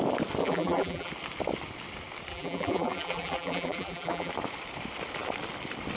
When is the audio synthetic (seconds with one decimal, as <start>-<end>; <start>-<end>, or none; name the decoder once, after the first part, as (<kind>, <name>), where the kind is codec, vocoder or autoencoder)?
0.4-1.1 (vocoder, BigVGAN v2); 2.3-4.3